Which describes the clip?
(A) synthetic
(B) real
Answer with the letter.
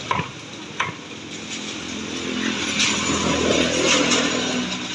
B